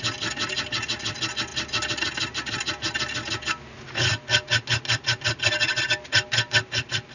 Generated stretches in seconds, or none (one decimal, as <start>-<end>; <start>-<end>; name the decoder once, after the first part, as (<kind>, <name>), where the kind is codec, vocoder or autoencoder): none